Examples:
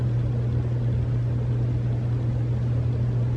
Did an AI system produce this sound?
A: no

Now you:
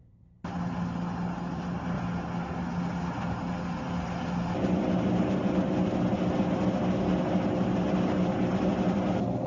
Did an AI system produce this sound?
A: no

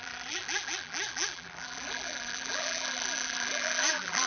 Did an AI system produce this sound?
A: yes